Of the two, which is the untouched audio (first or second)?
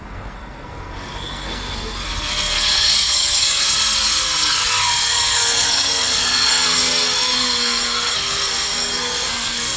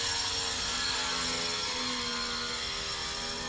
second